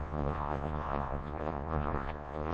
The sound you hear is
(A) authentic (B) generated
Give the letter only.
B